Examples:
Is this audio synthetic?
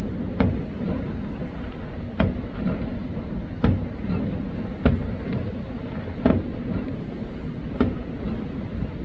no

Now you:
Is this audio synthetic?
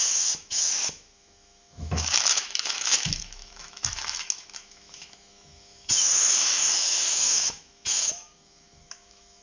yes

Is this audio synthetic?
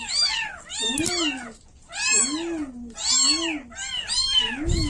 no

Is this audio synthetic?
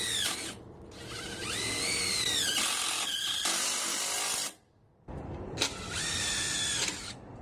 no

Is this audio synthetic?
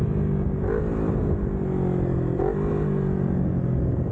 no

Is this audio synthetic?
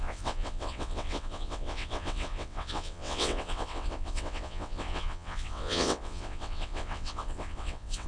yes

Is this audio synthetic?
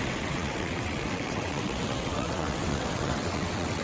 yes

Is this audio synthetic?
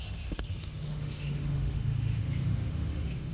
yes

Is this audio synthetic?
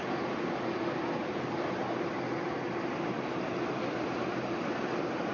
no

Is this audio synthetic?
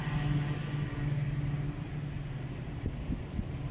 no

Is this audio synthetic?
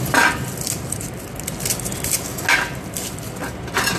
no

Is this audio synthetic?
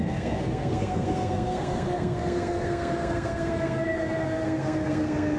yes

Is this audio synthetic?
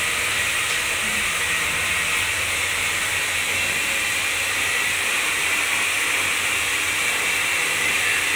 no